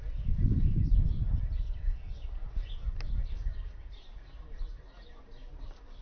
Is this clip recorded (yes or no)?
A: yes